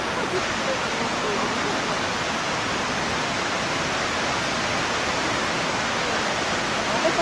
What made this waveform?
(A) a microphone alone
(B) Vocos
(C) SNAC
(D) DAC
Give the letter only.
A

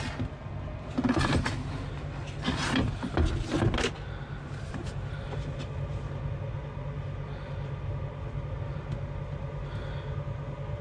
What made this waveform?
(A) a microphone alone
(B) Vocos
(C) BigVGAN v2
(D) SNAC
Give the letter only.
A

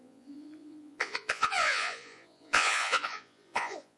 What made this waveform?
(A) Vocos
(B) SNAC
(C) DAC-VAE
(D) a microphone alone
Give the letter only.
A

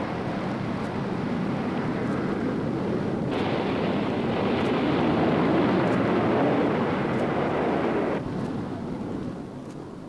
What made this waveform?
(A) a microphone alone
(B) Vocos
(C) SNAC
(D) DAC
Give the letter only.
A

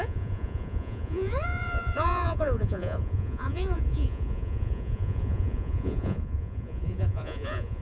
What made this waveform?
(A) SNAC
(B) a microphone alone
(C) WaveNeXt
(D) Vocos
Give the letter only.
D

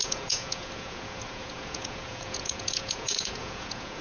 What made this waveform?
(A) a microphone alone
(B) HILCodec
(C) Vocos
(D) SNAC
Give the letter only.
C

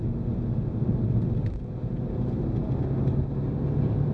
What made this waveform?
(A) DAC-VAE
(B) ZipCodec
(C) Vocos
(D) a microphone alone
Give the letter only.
D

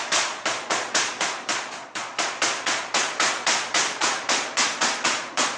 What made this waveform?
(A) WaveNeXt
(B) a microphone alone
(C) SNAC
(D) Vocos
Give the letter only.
D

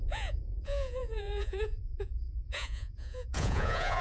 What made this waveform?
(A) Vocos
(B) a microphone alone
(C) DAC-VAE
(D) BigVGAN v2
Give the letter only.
A